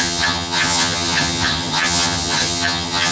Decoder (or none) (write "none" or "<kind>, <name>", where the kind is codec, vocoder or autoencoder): vocoder, HiFi-GAN